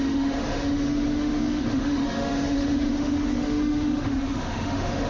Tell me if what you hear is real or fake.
fake